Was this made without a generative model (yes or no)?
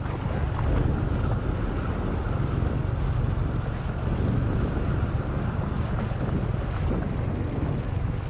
yes